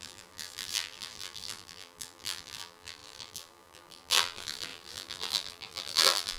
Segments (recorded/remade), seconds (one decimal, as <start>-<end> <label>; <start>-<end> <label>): 0.0-6.4 remade